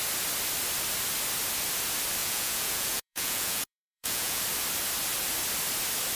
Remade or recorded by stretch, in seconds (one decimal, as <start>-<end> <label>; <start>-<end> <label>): 0.0-2.2 recorded; 2.2-4.4 remade; 4.4-6.1 recorded

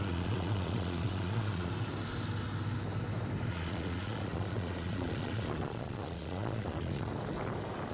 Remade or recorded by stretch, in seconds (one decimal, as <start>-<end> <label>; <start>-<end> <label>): 0.0-1.7 remade; 1.7-3.5 recorded; 3.5-7.1 remade; 7.1-7.9 recorded

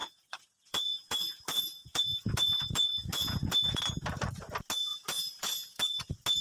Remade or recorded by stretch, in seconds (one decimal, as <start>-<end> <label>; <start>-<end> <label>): 0.0-3.8 remade; 3.8-4.9 recorded; 4.9-6.0 remade; 6.0-6.4 recorded

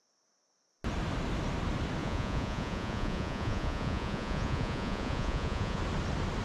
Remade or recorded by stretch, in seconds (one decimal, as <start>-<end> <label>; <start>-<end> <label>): 0.0-2.0 recorded; 2.0-5.8 remade; 5.8-6.4 recorded

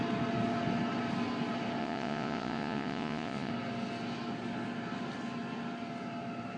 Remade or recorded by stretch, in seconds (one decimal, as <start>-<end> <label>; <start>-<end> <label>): 0.0-1.8 recorded; 1.8-3.5 remade; 3.5-6.6 recorded

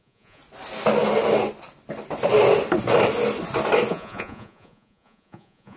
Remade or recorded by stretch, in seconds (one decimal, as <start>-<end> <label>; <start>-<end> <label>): 0.0-0.4 remade; 0.4-3.9 recorded; 3.9-5.8 remade

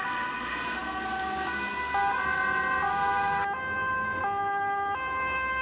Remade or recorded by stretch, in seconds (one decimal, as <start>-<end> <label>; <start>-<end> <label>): 0.0-5.6 recorded